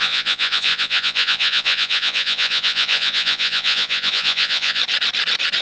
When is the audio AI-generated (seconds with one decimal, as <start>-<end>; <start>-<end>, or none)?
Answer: 0.0-4.8

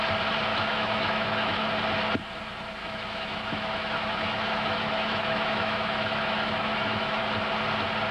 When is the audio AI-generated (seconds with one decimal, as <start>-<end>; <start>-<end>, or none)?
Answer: 0.5-1.7; 2.8-7.2

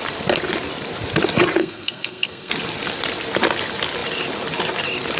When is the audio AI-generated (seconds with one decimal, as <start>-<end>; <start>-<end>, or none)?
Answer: 1.6-2.5

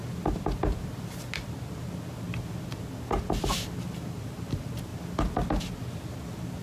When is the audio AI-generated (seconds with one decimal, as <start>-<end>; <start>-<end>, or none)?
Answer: 4.0-4.9

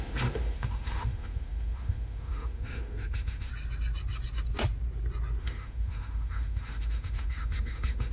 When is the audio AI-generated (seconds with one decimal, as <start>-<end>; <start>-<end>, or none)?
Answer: 0.0-3.5; 5.4-8.1

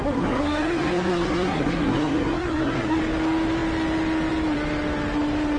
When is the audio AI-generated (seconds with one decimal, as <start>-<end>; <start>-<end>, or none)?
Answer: 0.0-3.0